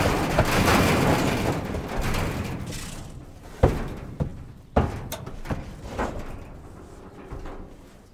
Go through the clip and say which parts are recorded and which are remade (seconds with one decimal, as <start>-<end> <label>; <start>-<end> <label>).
0.0-0.7 remade; 0.7-3.2 recorded; 3.2-8.1 remade